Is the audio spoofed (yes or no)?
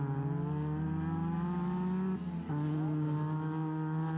no